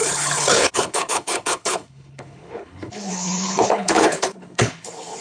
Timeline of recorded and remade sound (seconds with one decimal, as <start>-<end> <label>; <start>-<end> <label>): 0.0-5.2 remade